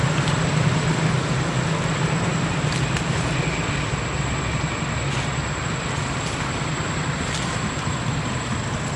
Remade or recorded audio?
recorded